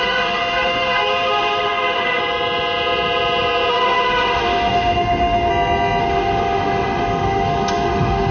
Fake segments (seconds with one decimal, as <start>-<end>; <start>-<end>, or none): 0.0-2.2; 3.7-5.5; 6.0-8.3